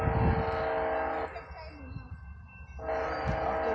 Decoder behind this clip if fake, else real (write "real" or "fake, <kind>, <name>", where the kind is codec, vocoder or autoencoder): real